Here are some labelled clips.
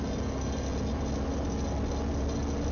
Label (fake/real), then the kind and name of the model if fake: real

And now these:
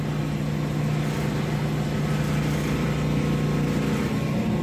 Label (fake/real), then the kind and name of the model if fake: real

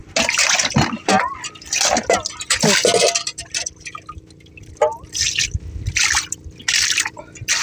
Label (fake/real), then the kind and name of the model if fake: real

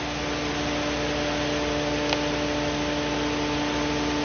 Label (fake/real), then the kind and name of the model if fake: real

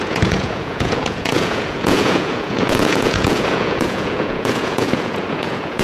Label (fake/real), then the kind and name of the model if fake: fake, vocoder, Vocos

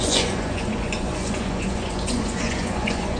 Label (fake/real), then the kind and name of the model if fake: fake, vocoder, Vocos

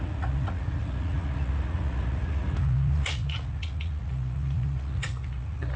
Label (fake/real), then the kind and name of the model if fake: fake, vocoder, Vocos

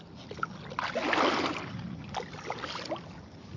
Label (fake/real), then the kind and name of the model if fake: real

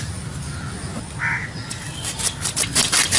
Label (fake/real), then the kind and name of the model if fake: real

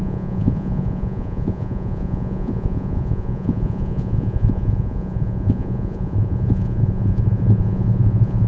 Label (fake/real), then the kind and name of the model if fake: fake, vocoder, Vocos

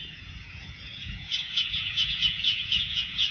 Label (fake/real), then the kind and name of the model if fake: fake, vocoder, Vocos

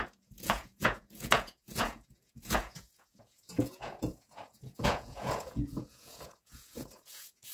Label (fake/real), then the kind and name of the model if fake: fake, vocoder, Vocos